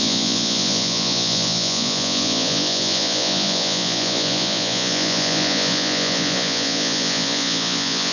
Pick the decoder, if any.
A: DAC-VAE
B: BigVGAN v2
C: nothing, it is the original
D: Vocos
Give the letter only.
D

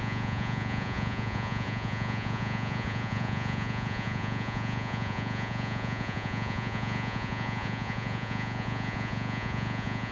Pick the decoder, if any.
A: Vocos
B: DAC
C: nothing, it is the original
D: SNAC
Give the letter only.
A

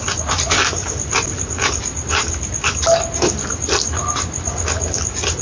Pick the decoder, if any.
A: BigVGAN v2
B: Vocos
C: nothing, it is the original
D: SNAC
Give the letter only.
C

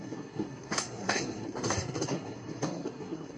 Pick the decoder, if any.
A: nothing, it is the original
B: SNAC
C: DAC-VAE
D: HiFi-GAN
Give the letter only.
B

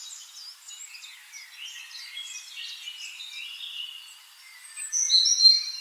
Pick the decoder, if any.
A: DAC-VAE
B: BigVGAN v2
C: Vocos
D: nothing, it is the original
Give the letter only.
D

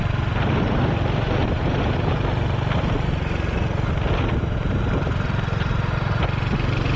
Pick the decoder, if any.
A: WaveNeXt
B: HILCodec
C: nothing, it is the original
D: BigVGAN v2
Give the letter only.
C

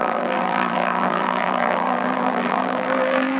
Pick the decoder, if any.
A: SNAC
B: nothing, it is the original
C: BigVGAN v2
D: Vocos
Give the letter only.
C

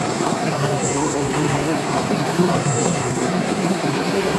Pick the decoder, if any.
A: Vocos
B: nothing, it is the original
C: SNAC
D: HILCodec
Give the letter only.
C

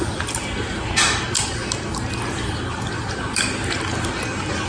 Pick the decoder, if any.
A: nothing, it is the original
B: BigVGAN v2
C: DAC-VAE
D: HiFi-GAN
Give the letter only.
A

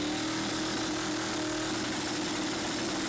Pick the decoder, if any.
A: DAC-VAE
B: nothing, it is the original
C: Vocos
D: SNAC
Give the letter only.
B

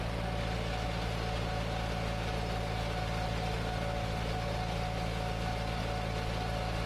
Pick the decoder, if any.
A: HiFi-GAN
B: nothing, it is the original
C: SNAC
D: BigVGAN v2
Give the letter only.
B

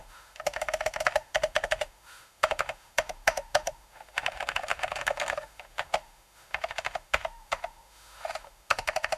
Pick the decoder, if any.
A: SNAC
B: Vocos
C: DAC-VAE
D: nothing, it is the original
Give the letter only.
C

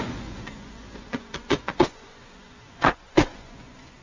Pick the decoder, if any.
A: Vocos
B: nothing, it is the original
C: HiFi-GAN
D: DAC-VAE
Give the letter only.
A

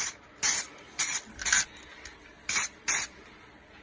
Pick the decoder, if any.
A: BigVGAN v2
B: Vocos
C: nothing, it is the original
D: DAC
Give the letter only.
C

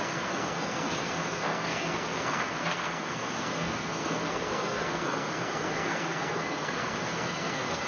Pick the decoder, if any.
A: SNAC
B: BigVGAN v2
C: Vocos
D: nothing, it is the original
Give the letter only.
A